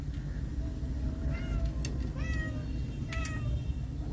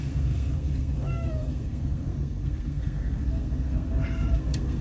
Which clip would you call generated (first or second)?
second